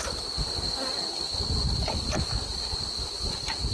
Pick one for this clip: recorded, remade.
recorded